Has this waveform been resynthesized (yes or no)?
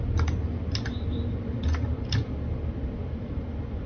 no